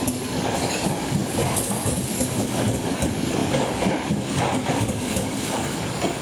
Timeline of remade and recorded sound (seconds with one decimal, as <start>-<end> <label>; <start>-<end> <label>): 0.0-6.2 remade